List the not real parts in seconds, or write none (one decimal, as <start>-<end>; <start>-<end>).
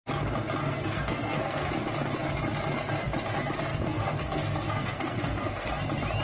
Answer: 0.6-1.7; 3.7-5.7